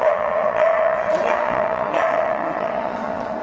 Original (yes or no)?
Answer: no